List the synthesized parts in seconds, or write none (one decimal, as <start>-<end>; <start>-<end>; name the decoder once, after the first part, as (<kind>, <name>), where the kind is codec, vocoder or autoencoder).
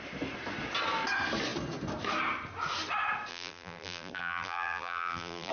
3.3-5.5 (vocoder, BigVGAN v2)